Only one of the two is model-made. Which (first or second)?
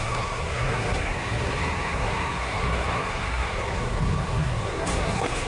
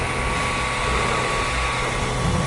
first